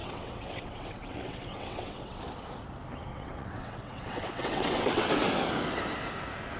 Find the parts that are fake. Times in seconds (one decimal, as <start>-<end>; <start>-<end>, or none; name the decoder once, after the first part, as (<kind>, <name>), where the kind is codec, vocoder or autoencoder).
0.0-2.2 (vocoder, WaveNeXt); 3.1-5.1